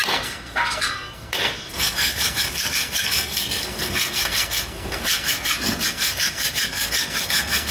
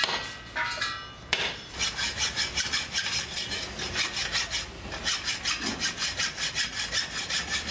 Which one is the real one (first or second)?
second